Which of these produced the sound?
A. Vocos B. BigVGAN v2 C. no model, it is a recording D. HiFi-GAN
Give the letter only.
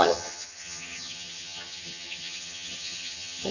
D